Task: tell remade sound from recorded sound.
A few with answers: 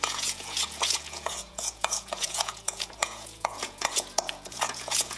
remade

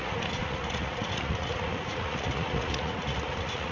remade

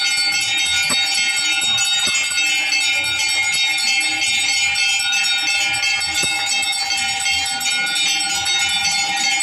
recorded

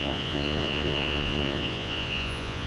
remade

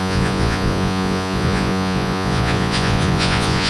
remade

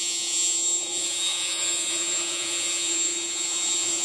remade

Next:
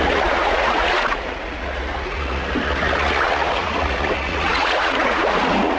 remade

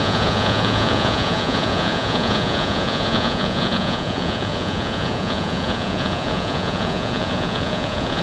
remade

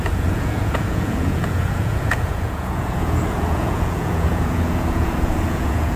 remade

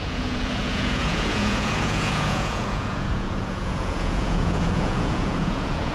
remade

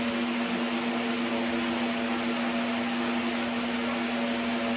recorded